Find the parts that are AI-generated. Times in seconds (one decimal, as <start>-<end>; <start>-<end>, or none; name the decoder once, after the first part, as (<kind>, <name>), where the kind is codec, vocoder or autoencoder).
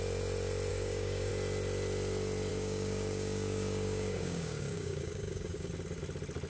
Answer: 0.7-1.3 (codec, DAC); 2.5-5.7